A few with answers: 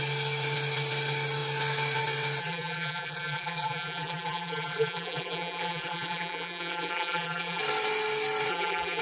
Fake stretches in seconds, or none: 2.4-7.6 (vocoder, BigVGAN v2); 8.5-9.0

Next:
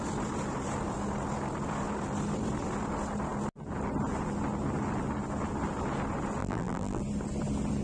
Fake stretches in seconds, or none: 6.4-7.0 (vocoder, BigVGAN v2)

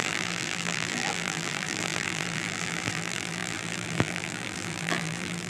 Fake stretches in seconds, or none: 0.0-5.5 (vocoder, BigVGAN v2)

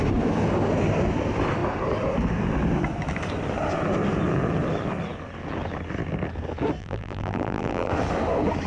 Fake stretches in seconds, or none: 6.8-7.9 (vocoder, BigVGAN v2)

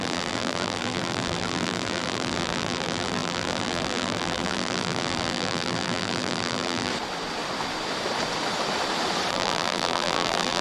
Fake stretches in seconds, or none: 0.0-6.9 (vocoder, BigVGAN v2); 9.3-10.6

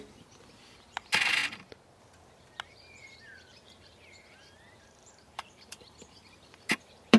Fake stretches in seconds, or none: 3.5-7.2 (vocoder, BigVGAN v2)